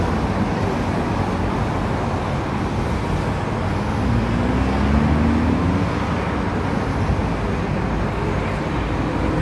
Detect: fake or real real